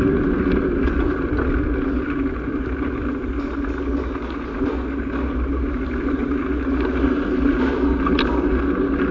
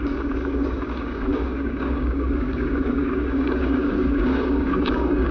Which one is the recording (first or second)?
first